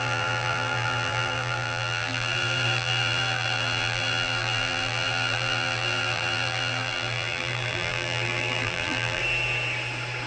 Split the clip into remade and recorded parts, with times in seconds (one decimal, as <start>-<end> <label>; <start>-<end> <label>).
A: 0.0-9.2 remade; 9.2-10.3 recorded